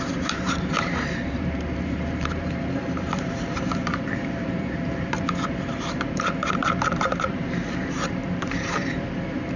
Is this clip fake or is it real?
fake